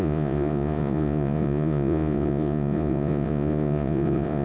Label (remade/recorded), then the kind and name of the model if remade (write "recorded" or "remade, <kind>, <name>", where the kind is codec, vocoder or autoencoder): remade, vocoder, Vocos